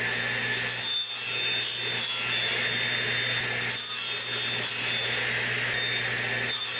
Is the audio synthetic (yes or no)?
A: no